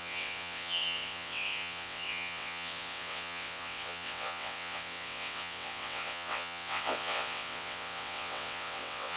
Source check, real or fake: fake